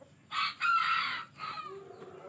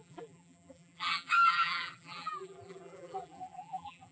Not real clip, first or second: second